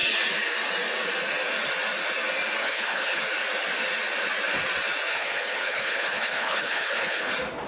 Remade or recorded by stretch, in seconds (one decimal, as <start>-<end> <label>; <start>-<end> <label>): 0.0-2.6 recorded; 2.6-3.2 remade; 3.2-5.1 recorded; 5.1-7.3 remade; 7.3-7.7 recorded

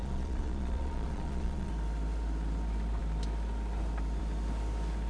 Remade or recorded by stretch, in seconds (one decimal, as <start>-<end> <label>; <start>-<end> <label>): 0.0-1.7 remade; 1.7-5.1 recorded

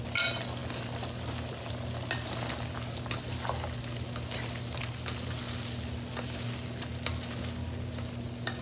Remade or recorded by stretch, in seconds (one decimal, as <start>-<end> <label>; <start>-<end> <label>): 0.0-8.6 recorded

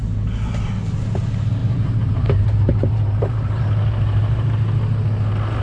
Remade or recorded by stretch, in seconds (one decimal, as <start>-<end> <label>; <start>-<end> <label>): 0.0-1.6 recorded; 1.6-3.6 remade; 3.6-5.6 recorded

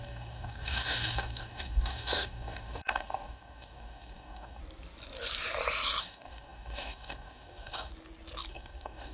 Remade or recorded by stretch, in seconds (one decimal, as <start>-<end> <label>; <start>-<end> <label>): 0.0-4.6 remade; 4.6-6.0 recorded; 6.0-7.9 remade; 7.9-8.5 recorded; 8.5-9.1 remade

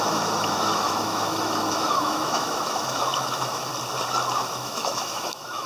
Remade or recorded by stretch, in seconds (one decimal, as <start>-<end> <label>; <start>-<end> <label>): 0.0-3.7 remade; 3.7-4.5 recorded; 4.5-5.7 remade

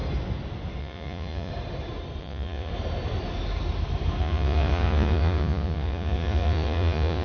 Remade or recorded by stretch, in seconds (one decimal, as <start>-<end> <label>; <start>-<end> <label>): 0.0-0.8 recorded; 0.8-1.5 remade; 1.5-2.2 recorded; 2.2-2.7 remade; 2.7-4.2 recorded; 4.2-7.2 remade

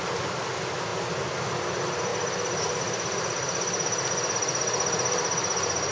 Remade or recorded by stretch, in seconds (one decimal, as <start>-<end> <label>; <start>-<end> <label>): 0.0-5.9 recorded